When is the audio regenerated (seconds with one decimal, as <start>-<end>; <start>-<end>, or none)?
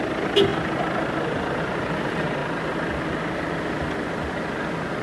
none